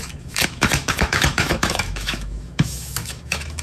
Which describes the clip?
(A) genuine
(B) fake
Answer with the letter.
B